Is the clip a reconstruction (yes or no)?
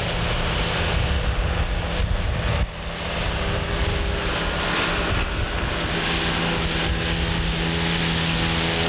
no